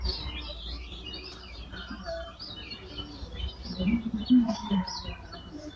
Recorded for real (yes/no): no